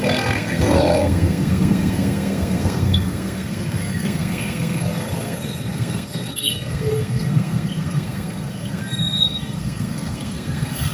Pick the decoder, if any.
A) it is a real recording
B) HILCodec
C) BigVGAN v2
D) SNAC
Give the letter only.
D